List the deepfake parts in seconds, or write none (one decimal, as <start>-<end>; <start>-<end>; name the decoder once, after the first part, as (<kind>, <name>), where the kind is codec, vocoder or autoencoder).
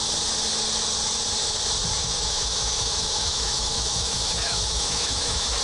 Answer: 2.0-5.6 (autoencoder, DAC-VAE)